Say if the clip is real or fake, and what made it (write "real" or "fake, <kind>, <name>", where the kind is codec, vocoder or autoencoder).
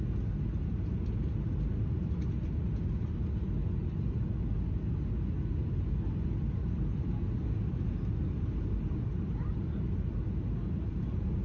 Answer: real